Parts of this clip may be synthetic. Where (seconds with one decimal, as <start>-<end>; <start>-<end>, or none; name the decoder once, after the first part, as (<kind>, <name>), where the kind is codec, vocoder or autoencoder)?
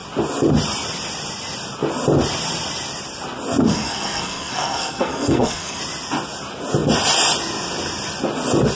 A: 3.7-5.8 (codec, SNAC)